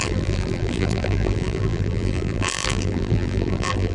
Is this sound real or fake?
fake